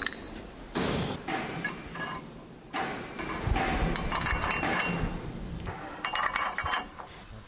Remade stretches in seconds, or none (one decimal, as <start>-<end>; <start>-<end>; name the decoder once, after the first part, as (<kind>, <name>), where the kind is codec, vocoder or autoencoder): 0.0-2.2 (vocoder, BigVGAN v2); 2.9-7.0